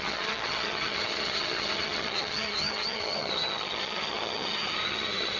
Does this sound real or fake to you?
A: fake